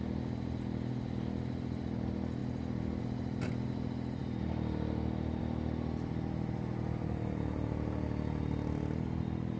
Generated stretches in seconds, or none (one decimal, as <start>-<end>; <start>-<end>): none